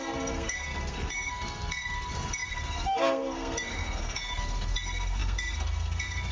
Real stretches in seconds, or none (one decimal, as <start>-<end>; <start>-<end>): none